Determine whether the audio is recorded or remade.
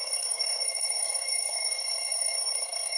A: remade